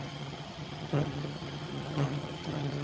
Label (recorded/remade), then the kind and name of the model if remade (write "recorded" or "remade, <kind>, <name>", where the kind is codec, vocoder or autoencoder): remade, vocoder, HiFi-GAN